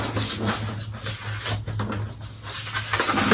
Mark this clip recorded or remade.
recorded